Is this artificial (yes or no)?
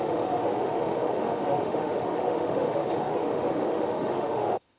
yes